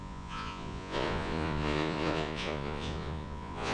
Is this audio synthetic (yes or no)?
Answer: yes